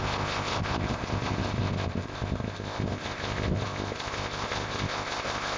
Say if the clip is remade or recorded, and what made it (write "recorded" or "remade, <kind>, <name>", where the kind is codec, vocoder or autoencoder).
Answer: remade, codec, ZipCodec